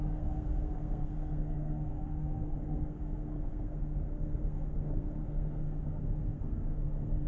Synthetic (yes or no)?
yes